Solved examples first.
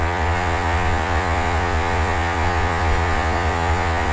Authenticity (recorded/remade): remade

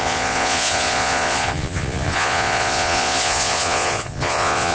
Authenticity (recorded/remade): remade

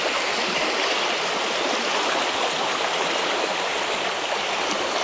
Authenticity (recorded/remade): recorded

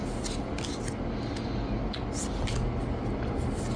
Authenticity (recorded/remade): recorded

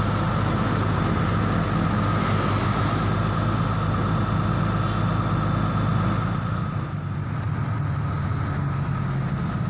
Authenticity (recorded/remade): recorded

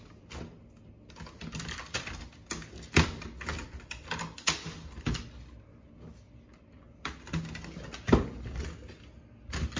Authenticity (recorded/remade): recorded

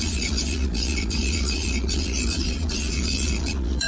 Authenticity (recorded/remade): remade